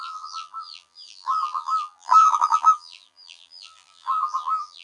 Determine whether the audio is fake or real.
fake